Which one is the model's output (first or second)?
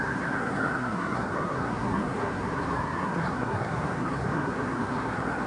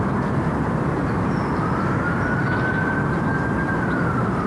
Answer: first